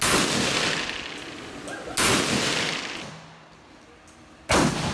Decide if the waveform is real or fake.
real